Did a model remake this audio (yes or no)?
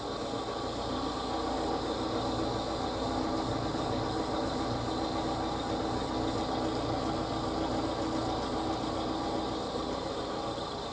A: no